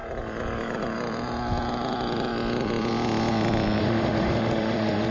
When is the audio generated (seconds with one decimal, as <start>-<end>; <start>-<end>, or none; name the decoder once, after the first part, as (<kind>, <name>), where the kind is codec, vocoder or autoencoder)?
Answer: 3.8-5.1 (autoencoder, DAC-VAE)